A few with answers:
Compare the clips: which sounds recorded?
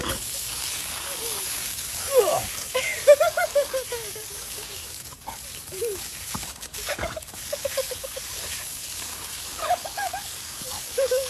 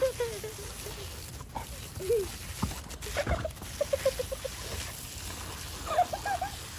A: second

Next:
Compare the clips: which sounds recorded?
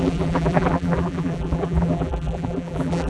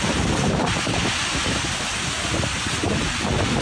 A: second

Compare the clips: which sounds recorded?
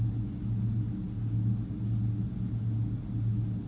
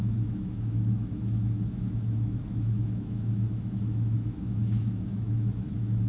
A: first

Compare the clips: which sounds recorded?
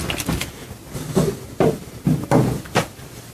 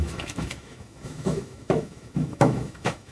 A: first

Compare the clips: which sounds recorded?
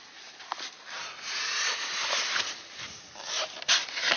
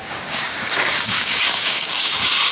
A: first